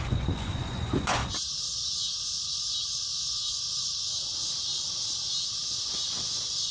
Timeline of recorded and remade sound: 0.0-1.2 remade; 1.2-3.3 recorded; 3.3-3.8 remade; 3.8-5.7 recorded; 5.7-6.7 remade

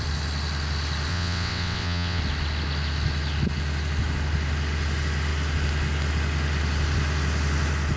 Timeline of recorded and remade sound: 0.0-1.1 recorded; 1.1-2.2 remade; 2.2-8.0 recorded

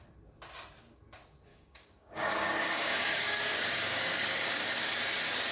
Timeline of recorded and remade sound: 0.0-1.5 recorded; 1.5-4.8 remade; 4.8-5.5 recorded

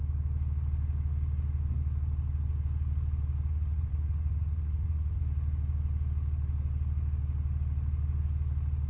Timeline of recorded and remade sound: 0.0-3.5 recorded; 3.5-5.2 remade; 5.2-8.9 recorded

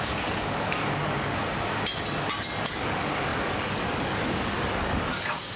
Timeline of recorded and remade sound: 0.0-1.4 remade; 1.4-2.7 recorded; 2.7-5.6 remade

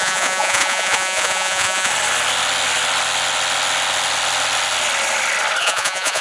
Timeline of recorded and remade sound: 0.0-1.9 remade; 1.9-5.6 recorded; 5.6-6.2 remade

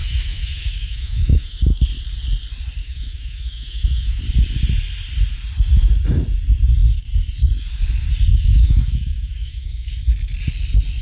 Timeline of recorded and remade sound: 0.0-1.8 remade; 1.8-2.8 recorded; 2.8-4.2 remade; 4.2-8.3 recorded; 8.3-9.9 remade; 9.9-11.0 recorded

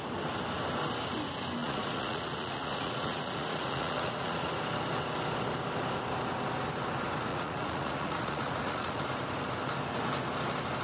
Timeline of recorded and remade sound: 0.0-1.6 recorded; 1.6-4.5 remade; 4.5-7.3 recorded; 7.3-9.0 remade; 9.0-10.8 recorded